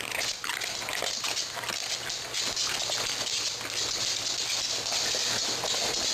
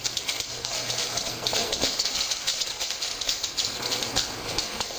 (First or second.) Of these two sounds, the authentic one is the first